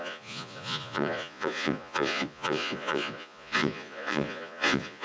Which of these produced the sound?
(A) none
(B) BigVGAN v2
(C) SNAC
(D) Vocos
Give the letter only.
D